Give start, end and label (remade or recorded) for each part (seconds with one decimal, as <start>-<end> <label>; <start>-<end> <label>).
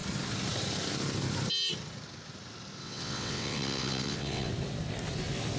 0.0-2.8 recorded; 2.8-4.5 remade; 4.5-5.6 recorded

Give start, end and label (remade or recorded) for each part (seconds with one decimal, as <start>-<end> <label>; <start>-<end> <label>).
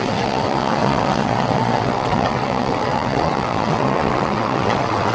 0.0-5.1 remade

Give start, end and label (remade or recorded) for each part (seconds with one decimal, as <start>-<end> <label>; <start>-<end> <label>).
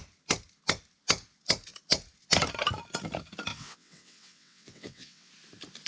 0.0-3.5 recorded; 3.5-5.3 remade; 5.3-5.9 recorded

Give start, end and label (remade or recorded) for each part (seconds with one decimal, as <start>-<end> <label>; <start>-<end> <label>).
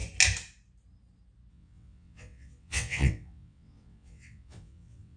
0.0-1.5 recorded; 1.5-5.2 remade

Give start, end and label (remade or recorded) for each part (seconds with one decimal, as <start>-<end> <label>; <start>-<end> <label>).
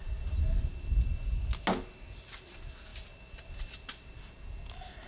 0.0-5.1 recorded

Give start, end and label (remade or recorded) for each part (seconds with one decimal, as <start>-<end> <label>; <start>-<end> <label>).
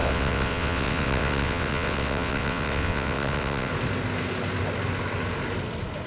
0.0-3.7 remade; 3.7-6.1 recorded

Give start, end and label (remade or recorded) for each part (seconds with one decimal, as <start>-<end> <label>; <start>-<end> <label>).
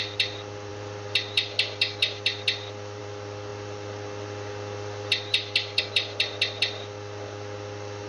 0.0-8.1 recorded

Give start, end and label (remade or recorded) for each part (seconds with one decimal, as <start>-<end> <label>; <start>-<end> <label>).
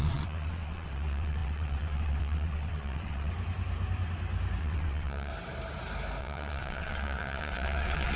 0.0-3.3 remade; 3.3-4.6 recorded; 4.6-5.3 remade; 5.3-6.2 recorded; 6.2-8.2 remade